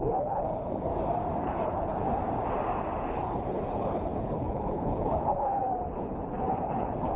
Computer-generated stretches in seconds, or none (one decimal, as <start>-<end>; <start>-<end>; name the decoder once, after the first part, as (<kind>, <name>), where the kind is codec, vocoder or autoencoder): 0.0-0.9 (codec, HILCodec); 1.4-2.2; 3.1-7.2